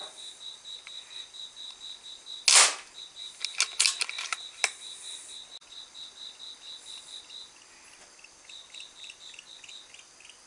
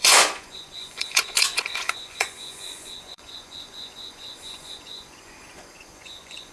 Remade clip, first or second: second